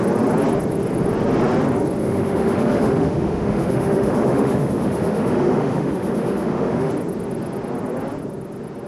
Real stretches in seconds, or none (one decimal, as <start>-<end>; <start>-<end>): 0.0-2.0; 6.9-8.9